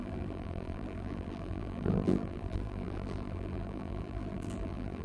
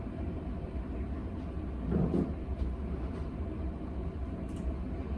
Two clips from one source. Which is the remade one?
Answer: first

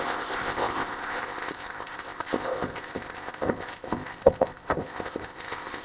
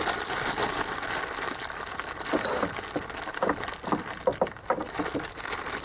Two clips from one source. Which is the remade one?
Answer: first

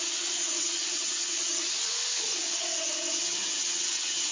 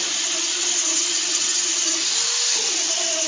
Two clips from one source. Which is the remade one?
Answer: first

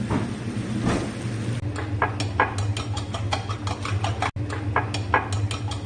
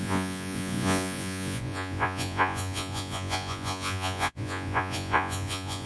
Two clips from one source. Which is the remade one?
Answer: second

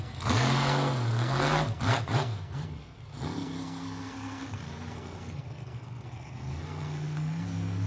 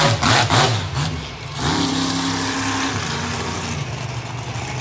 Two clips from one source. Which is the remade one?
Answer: first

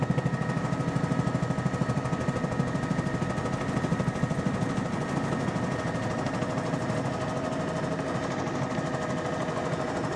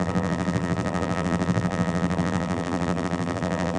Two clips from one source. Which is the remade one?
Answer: second